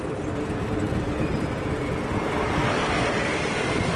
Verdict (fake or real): real